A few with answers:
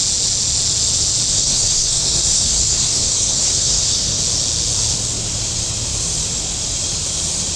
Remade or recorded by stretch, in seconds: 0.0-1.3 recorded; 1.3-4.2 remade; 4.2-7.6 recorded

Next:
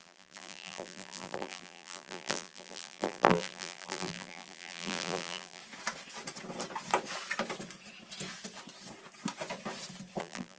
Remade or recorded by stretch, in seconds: 0.0-5.6 remade; 5.6-10.2 recorded; 10.2-10.6 remade